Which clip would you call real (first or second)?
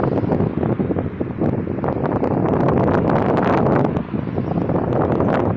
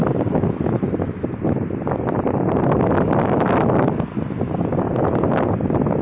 first